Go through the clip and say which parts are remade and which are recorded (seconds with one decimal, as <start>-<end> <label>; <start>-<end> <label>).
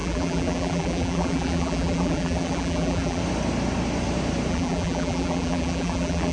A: 0.0-3.2 remade; 3.2-4.5 recorded; 4.5-6.3 remade